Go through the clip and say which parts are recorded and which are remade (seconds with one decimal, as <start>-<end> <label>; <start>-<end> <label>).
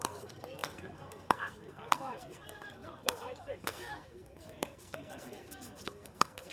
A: 0.0-6.5 remade